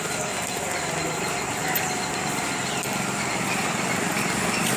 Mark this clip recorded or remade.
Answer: recorded